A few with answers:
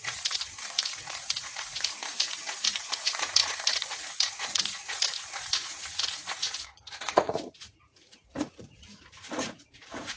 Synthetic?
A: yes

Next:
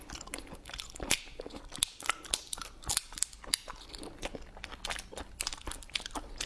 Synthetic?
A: no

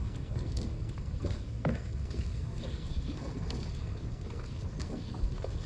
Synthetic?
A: yes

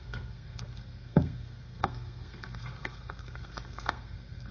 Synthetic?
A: yes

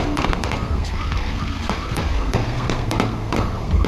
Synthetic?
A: yes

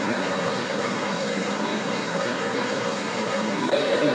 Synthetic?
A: yes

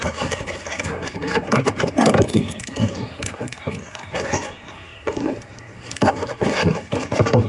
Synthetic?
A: yes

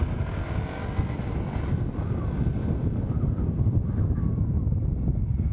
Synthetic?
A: no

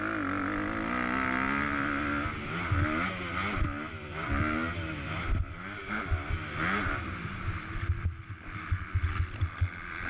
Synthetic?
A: no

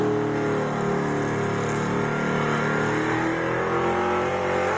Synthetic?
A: no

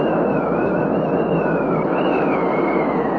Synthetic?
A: no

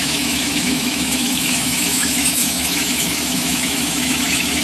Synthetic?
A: yes